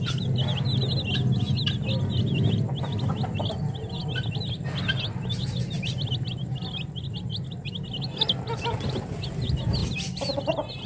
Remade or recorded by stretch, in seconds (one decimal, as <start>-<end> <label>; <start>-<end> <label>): 0.0-10.9 recorded